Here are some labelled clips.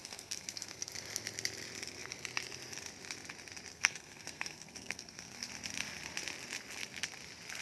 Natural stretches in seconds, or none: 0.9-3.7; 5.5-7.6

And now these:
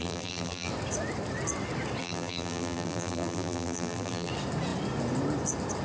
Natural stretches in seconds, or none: 0.7-2.0; 4.3-5.8

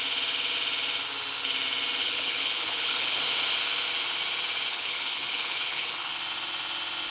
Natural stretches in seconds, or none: 0.0-2.0; 3.2-4.7; 6.1-7.1

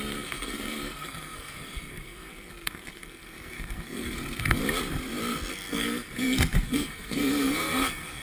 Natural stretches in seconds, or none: 4.6-5.5

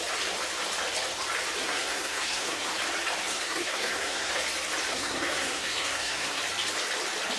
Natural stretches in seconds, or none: 0.0-1.6; 2.7-3.3; 4.3-4.9; 6.4-7.4